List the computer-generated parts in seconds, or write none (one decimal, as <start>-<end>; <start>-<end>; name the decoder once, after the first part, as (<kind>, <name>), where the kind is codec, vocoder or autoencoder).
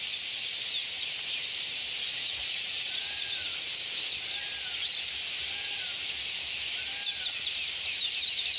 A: 2.4-3.5 (vocoder, Vocos)